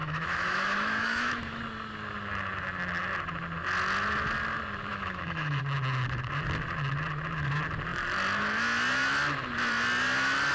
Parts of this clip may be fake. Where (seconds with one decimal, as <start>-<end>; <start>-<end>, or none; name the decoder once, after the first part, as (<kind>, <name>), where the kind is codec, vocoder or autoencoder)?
0.0-1.6 (autoencoder, DAC-VAE); 4.9-5.6